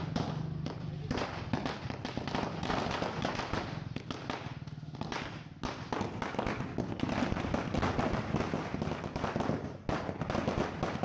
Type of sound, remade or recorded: recorded